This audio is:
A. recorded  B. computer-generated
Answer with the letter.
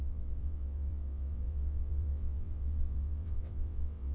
B